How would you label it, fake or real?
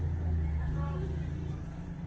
real